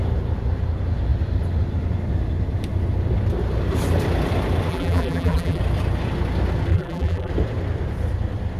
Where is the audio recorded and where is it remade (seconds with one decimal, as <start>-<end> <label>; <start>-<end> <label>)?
0.0-4.7 recorded; 4.7-5.6 remade; 5.6-6.7 recorded; 6.7-7.3 remade; 7.3-8.6 recorded